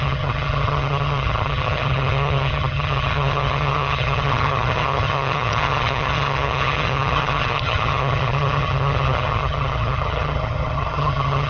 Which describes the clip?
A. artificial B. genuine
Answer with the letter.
A